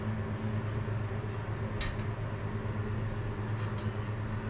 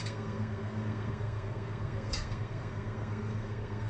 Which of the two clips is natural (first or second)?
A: first